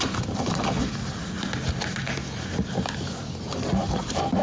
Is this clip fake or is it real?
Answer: fake